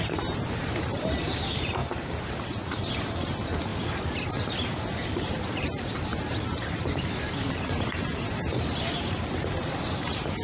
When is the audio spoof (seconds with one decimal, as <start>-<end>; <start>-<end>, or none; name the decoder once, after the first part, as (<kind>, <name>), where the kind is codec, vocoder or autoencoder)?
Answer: 0.0-3.7 (vocoder, BigVGAN v2); 5.3-10.4